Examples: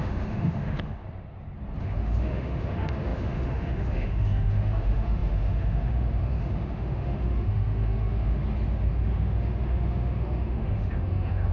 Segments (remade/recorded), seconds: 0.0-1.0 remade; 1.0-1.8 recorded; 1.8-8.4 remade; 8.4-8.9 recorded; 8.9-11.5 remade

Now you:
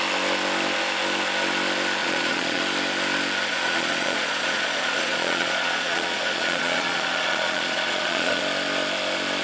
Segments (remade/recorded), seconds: 0.0-2.0 recorded; 2.0-2.6 remade; 2.6-3.5 recorded; 3.5-8.4 remade; 8.4-9.4 recorded

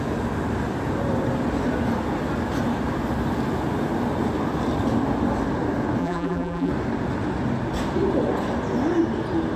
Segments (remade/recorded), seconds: 0.0-6.0 recorded; 6.0-6.7 remade; 6.7-9.6 recorded

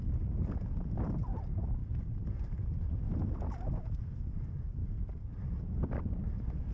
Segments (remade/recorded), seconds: 0.0-1.8 remade; 1.8-4.0 recorded; 4.0-6.7 remade

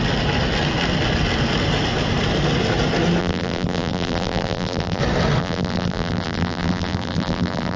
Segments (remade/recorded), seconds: 0.0-3.2 recorded; 3.2-5.0 remade; 5.0-5.4 recorded; 5.4-7.8 remade

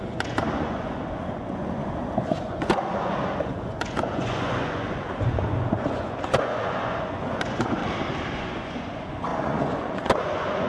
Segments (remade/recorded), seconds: 0.0-7.8 remade; 7.8-8.4 recorded; 8.4-10.7 remade

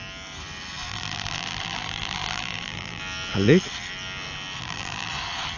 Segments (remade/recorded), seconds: 0.0-0.9 recorded; 0.9-3.0 remade; 3.0-4.6 recorded; 4.6-5.1 remade; 5.1-5.6 recorded